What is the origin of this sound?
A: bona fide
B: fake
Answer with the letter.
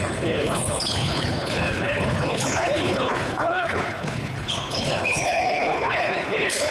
B